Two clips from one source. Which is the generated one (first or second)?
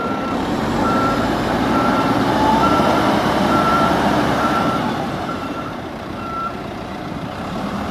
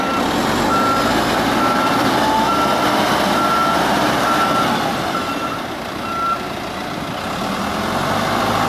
first